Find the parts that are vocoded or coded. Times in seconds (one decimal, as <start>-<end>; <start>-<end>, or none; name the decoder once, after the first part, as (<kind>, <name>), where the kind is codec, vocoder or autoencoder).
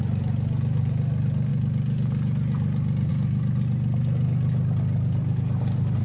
none